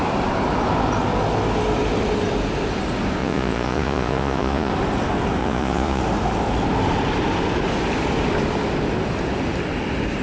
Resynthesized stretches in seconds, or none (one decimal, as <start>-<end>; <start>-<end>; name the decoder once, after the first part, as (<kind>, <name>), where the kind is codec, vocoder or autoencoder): 3.2-4.7 (vocoder, Vocos); 5.4-6.0